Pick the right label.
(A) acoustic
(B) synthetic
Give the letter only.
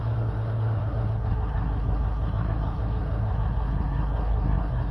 B